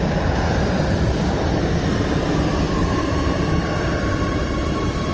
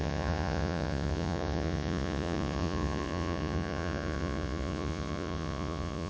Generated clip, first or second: second